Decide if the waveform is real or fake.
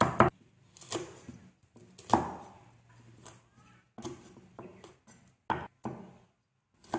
real